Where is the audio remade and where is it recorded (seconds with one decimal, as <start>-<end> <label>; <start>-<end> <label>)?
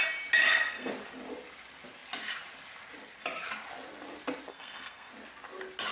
0.0-0.4 recorded; 0.4-0.9 remade; 0.9-4.5 recorded; 4.5-5.1 remade; 5.1-5.9 recorded